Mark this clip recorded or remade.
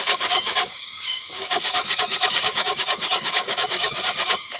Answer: remade